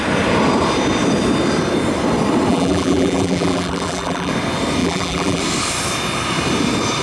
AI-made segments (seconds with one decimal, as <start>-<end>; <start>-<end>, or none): 2.5-4.3; 4.8-5.4